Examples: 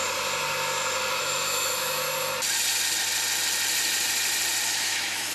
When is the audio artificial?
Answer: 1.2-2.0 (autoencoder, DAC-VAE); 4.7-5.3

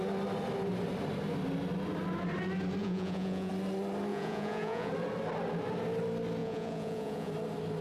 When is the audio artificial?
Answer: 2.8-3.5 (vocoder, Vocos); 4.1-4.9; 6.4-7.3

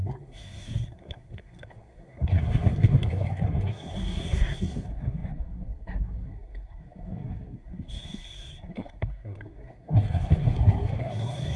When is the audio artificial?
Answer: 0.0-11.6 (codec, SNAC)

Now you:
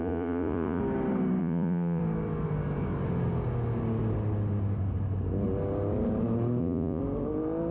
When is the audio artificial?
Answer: 0.0-0.8 (vocoder, Vocos); 1.4-2.0; 6.6-7.0

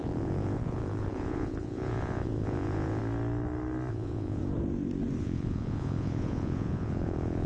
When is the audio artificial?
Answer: 0.0-3.0 (vocoder, Vocos); 3.9-4.4; 5.2-7.5

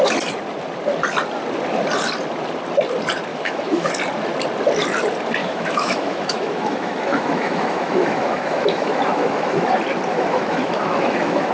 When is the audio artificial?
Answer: 3.3-3.9 (autoencoder, DAC-VAE); 5.4-9.7; 10.1-11.5

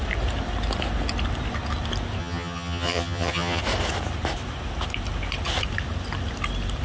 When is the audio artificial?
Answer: 2.2-3.6 (vocoder, HiFi-GAN)

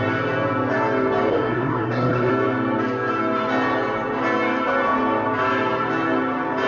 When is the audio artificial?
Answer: 1.3-2.3 (codec, SNAC)